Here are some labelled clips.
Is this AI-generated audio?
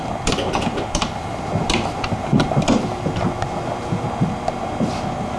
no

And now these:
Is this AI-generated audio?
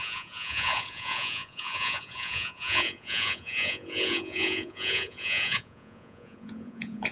yes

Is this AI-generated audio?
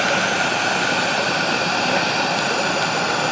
no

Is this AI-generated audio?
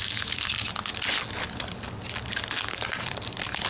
no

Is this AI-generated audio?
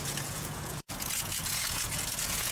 yes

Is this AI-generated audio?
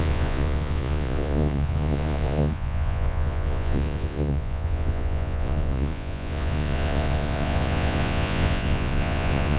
yes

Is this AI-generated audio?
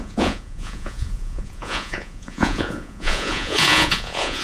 yes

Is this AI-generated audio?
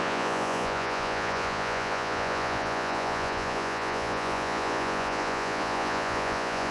yes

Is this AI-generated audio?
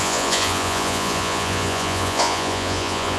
yes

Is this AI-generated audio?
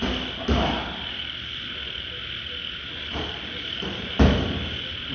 no